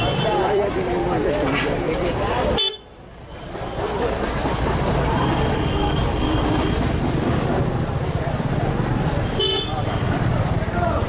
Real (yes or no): no